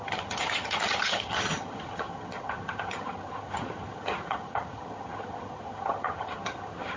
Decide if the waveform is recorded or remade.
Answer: remade